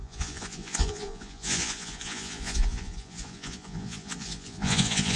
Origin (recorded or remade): remade